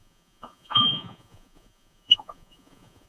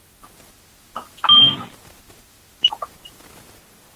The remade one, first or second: first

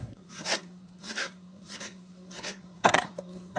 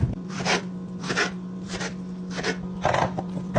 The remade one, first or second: first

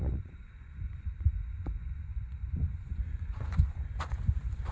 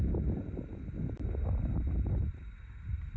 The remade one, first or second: first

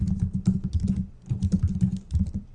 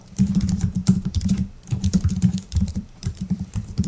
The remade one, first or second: second